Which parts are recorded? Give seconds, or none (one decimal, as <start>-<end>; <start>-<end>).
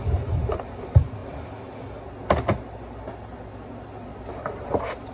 1.2-4.3